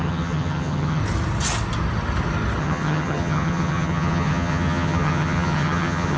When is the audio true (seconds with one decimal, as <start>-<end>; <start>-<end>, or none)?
1.0-2.6